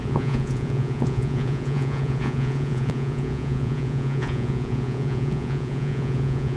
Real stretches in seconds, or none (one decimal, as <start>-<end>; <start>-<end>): none